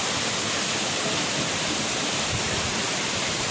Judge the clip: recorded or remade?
recorded